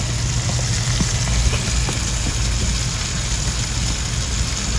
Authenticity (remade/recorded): recorded